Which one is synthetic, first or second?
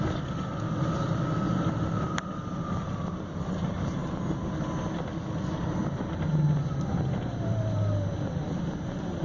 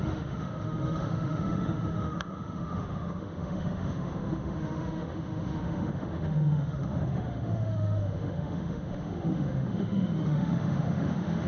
second